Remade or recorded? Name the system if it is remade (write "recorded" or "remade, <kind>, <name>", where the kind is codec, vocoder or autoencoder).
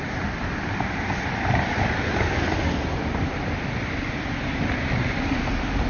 remade, vocoder, BigVGAN v2